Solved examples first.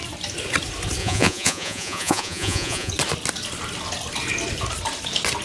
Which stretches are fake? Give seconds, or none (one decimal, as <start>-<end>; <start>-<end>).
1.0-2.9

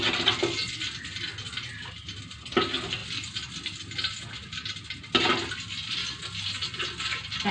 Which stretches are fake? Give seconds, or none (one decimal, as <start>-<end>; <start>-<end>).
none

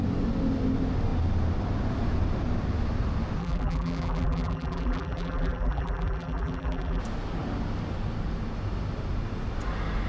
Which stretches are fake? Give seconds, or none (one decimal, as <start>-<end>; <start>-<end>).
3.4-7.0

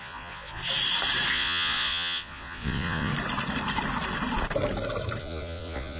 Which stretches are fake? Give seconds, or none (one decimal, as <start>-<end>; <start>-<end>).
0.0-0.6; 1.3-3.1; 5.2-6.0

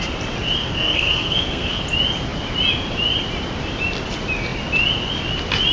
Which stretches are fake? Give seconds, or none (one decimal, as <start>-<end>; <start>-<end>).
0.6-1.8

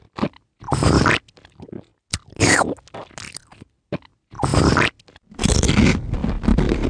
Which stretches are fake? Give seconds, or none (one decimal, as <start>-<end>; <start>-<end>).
none